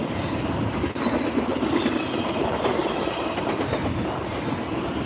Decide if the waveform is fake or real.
real